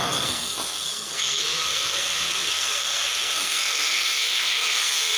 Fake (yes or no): yes